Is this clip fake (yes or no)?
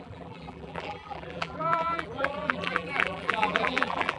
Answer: yes